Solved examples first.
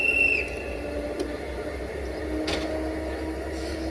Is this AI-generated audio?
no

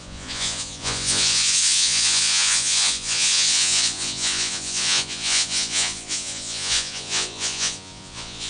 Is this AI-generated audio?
yes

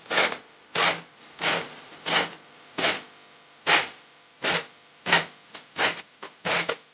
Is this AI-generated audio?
no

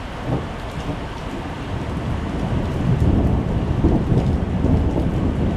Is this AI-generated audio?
no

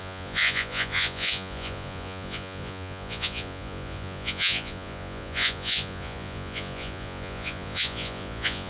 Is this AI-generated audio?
yes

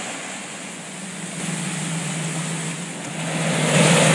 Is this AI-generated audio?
yes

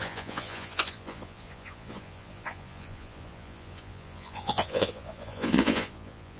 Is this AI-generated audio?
yes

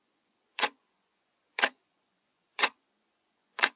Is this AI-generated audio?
yes